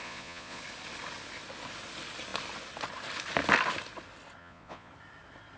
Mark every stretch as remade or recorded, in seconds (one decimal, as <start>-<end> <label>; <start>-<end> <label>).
0.0-0.6 remade; 0.6-4.4 recorded; 4.4-4.9 remade; 4.9-5.6 recorded